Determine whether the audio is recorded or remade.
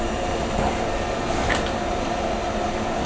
recorded